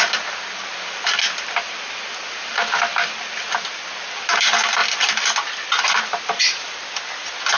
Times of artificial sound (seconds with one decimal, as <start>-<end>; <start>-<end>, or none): none